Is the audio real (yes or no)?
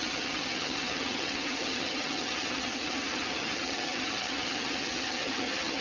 no